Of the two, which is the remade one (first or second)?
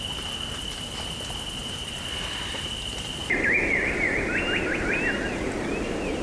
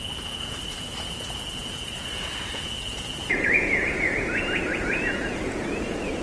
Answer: second